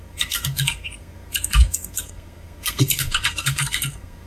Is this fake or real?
fake